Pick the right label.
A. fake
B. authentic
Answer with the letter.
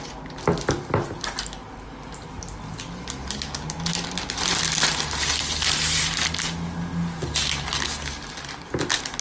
B